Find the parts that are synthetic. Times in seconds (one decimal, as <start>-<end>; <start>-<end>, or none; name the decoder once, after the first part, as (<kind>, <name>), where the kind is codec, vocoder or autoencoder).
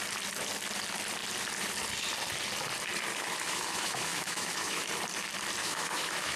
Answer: 3.1-4.9 (autoencoder, DAC-VAE); 5.6-6.4